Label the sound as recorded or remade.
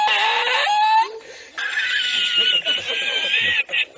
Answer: recorded